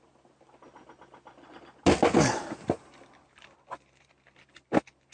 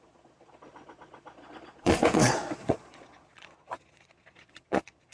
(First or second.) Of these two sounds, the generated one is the second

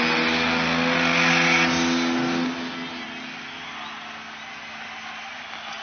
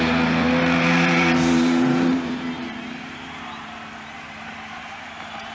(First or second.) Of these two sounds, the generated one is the second